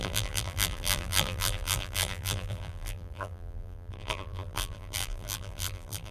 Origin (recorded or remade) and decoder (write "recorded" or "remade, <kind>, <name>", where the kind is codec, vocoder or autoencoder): remade, vocoder, BigVGAN v2